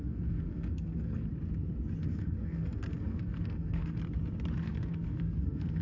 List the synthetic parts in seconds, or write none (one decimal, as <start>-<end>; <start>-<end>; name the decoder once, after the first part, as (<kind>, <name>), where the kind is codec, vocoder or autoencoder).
0.0-1.3 (codec, SNAC); 2.0-4.0; 4.6-5.8